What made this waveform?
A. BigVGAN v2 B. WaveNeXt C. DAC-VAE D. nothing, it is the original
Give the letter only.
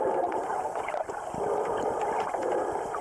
D